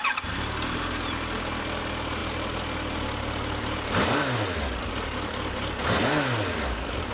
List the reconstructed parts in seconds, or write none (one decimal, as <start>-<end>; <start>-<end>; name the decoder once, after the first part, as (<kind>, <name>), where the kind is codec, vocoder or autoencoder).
none